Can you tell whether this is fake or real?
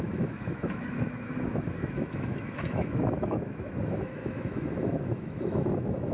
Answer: fake